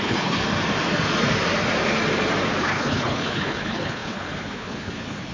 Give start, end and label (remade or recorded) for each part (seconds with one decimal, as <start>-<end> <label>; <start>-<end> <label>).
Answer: 0.0-0.4 remade; 0.4-2.6 recorded; 2.6-5.3 remade